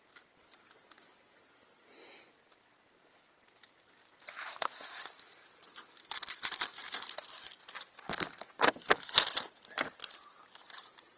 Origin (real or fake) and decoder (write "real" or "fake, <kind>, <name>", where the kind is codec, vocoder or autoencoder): real